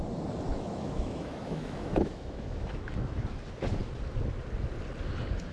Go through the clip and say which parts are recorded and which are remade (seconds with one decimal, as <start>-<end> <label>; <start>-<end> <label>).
0.0-0.5 recorded; 0.5-3.2 remade; 3.2-5.5 recorded